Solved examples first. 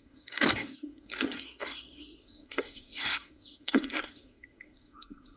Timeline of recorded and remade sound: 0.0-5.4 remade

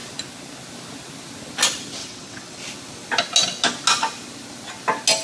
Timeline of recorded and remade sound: 0.0-2.0 recorded; 2.0-2.6 remade; 2.6-5.2 recorded

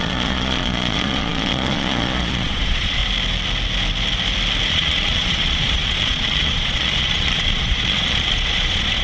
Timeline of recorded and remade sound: 0.0-3.0 remade; 3.0-4.7 recorded; 4.7-9.0 remade